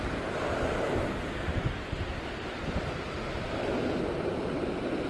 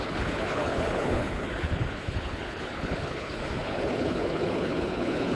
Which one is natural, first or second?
first